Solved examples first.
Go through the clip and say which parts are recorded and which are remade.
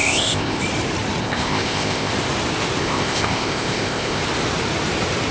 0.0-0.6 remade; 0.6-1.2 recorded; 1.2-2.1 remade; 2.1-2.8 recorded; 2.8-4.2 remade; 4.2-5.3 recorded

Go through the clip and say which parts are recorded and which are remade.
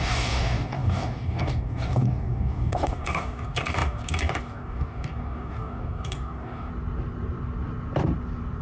0.0-6.7 remade; 6.7-8.6 recorded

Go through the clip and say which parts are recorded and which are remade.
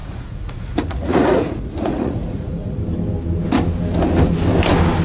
0.0-2.8 remade; 2.8-5.0 recorded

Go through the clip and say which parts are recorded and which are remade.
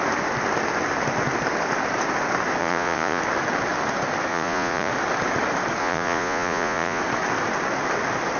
0.0-2.6 recorded; 2.6-3.2 remade; 3.2-4.3 recorded; 4.3-4.9 remade; 4.9-5.8 recorded; 5.8-7.0 remade; 7.0-8.4 recorded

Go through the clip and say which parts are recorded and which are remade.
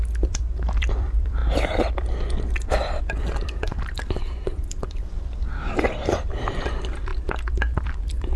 0.0-8.4 remade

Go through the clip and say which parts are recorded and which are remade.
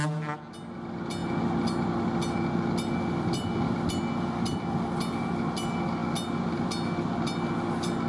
0.0-8.1 recorded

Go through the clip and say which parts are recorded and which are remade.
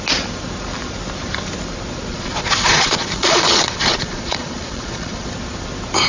0.0-2.1 recorded; 2.1-5.3 remade; 5.3-6.1 recorded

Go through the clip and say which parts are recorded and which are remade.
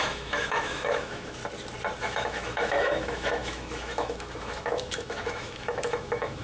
0.0-1.4 remade; 1.4-2.0 recorded; 2.0-6.4 remade